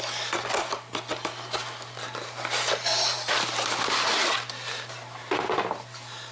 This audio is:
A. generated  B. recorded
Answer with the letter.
B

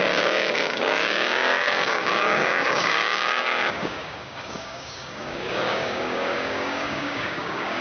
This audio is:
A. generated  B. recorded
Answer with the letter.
A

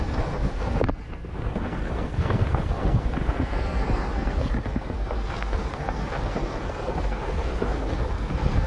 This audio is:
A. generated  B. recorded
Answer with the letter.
A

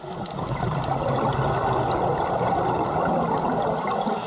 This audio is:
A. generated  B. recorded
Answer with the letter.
B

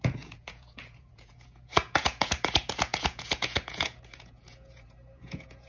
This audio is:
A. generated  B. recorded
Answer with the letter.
A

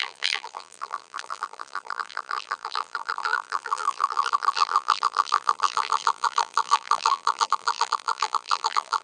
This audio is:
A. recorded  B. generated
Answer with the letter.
B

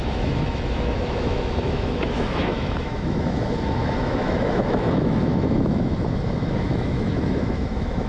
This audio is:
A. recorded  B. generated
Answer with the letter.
B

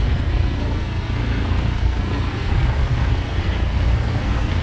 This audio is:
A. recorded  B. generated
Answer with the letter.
B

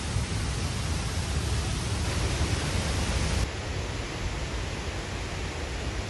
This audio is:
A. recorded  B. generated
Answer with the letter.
A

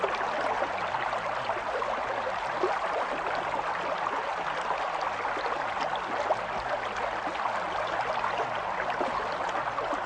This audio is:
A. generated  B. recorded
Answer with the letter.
B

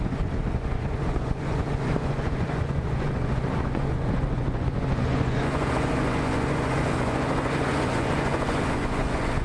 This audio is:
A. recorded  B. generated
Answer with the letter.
B